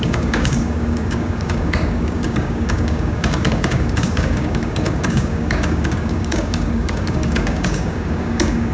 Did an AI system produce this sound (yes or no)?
yes